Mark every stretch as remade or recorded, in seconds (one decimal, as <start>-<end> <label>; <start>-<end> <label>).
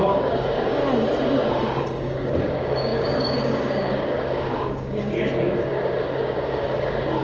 0.0-0.8 remade; 0.8-1.5 recorded; 1.5-7.2 remade